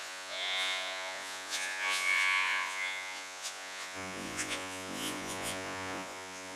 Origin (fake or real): fake